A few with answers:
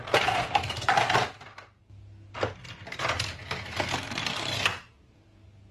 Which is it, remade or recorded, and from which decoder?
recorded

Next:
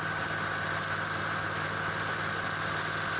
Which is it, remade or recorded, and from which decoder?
recorded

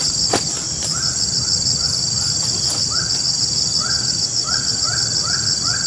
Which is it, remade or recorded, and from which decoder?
recorded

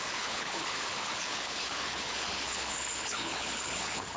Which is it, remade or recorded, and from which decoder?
remade, codec, HILCodec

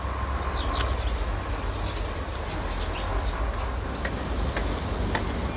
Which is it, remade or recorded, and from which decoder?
recorded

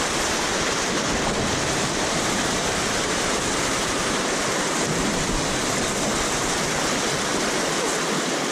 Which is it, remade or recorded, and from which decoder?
recorded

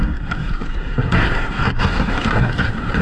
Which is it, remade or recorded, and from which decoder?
remade, codec, SNAC